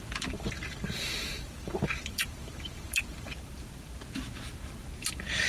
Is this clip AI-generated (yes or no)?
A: yes